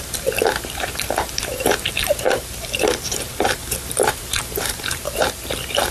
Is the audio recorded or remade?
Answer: remade